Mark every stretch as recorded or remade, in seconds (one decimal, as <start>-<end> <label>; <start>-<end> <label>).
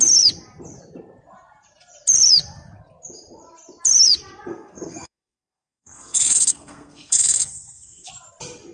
0.0-4.5 recorded; 4.5-8.1 remade; 8.1-8.7 recorded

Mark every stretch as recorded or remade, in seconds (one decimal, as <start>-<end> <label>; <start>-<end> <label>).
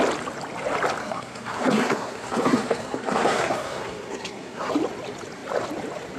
0.0-1.0 recorded; 1.0-4.7 remade; 4.7-6.2 recorded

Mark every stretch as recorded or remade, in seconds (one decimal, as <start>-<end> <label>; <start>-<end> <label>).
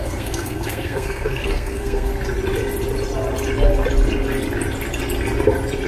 0.0-2.1 remade; 2.1-5.9 recorded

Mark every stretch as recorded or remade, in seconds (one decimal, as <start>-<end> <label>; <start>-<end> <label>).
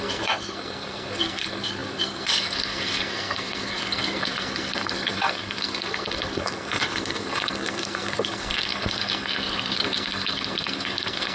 0.0-11.3 remade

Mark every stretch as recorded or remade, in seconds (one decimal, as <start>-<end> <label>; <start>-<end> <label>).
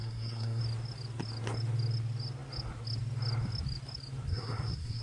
0.0-0.6 remade; 0.6-4.3 recorded; 4.3-5.0 remade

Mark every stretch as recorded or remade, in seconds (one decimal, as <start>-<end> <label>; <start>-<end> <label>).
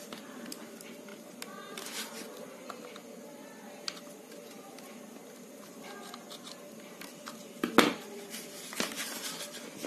0.0-9.9 recorded